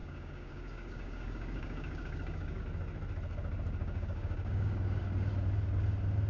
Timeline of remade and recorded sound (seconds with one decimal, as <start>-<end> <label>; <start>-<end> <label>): 0.0-2.6 remade; 2.6-3.8 recorded; 3.8-5.0 remade; 5.0-6.3 recorded